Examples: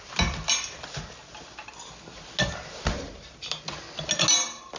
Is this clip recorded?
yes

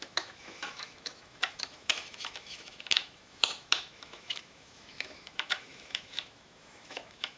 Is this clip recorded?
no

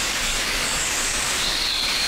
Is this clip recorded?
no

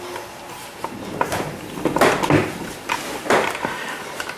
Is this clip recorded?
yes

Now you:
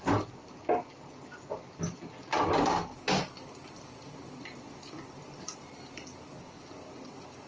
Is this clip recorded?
yes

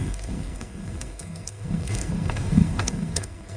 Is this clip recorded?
no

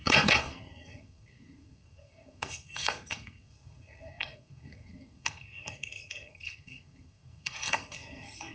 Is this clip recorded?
no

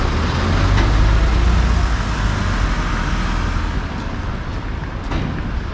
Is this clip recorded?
yes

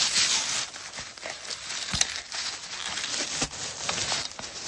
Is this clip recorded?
yes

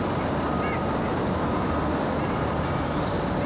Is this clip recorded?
yes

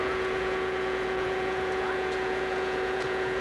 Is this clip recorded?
no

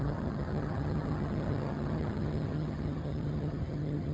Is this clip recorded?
no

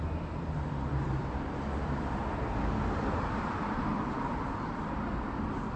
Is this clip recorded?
no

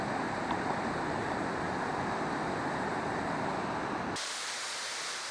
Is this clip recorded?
yes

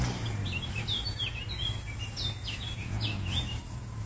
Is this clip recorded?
yes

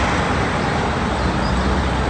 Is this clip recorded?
yes